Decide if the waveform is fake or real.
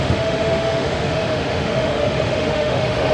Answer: fake